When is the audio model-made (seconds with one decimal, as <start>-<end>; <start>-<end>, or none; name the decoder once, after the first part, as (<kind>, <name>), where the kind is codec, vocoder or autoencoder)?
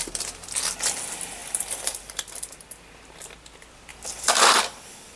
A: 1.4-2.0 (vocoder, BigVGAN v2); 3.9-4.4